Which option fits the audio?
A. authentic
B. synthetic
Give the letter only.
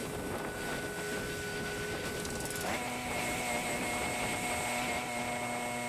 A